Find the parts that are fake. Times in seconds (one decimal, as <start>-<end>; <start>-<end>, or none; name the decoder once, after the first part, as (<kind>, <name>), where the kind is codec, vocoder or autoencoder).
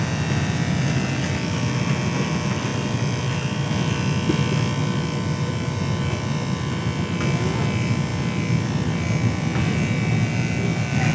none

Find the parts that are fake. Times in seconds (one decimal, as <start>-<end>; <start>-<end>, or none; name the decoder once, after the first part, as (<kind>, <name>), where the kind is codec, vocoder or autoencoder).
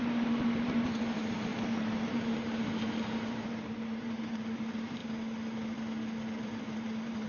0.0-5.0 (vocoder, BigVGAN v2); 6.3-7.3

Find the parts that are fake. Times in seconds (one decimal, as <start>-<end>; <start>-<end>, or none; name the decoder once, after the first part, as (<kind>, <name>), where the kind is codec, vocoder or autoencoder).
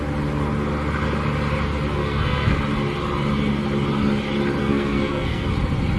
2.0-2.6 (codec, SNAC); 4.6-5.5